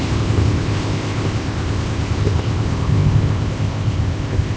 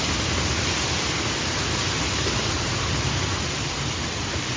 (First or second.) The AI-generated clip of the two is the first